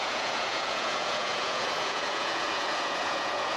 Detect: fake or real fake